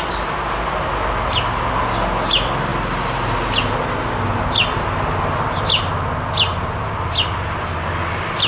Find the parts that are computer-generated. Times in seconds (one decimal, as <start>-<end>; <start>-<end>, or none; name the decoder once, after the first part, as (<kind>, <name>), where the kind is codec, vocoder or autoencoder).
none